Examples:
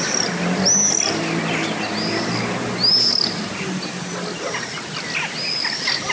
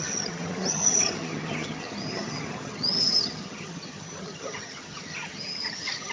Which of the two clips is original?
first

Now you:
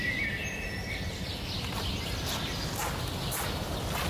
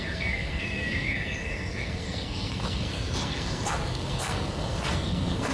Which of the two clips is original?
first